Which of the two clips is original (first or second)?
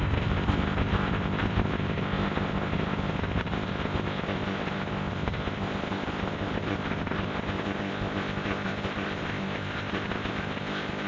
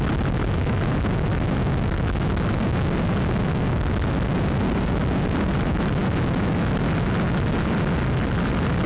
second